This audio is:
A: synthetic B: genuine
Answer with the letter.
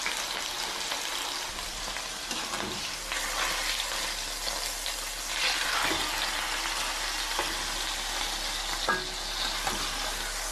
B